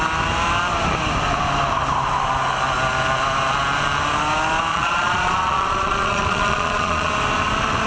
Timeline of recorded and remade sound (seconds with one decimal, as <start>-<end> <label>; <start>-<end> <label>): 0.0-4.7 recorded; 4.7-7.1 remade; 7.1-7.9 recorded